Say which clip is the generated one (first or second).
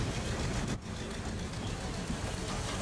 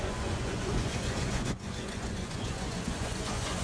second